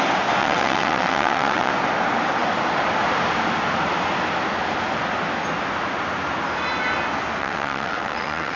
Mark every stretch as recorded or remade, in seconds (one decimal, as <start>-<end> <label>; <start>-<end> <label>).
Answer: 0.0-0.4 recorded; 0.4-1.7 remade; 1.7-7.4 recorded; 7.4-8.6 remade